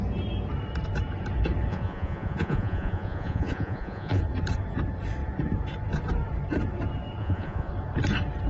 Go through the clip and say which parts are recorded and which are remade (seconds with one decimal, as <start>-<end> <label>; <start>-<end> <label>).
0.0-1.7 recorded; 1.7-4.2 remade; 4.2-7.2 recorded; 7.2-7.7 remade; 7.7-8.5 recorded